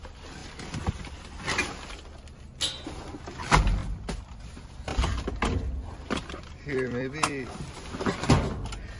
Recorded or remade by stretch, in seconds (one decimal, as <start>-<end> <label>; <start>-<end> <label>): 0.0-3.8 recorded; 3.8-4.5 remade; 4.5-4.9 recorded; 4.9-7.7 remade; 7.7-9.0 recorded